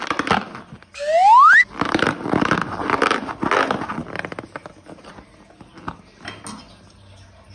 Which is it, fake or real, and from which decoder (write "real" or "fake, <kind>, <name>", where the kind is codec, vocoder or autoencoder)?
real